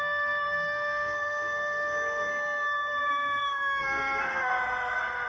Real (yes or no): no